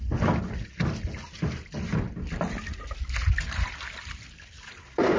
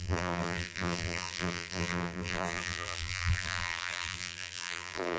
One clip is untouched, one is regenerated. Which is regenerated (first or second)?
second